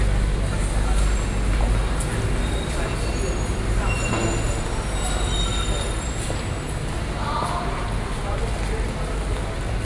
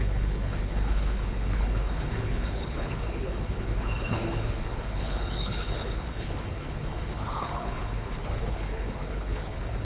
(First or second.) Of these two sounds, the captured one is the first